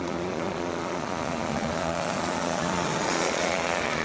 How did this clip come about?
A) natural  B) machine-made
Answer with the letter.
B